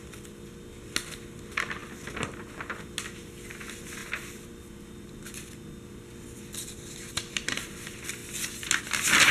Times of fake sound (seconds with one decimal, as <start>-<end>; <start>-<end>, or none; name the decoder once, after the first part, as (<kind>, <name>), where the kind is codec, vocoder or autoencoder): none

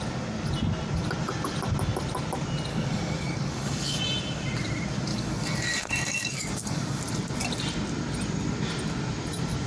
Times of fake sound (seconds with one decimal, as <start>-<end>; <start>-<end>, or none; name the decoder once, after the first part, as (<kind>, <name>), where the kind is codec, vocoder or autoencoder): 2.7-4.0 (codec, DAC); 5.1-7.0

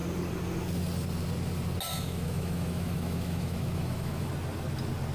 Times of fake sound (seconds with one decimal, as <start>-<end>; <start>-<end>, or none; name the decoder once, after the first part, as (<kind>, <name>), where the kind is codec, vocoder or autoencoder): 1.9-4.3 (autoencoder, DAC-VAE)